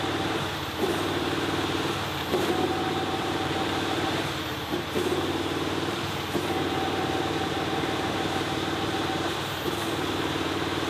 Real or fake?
fake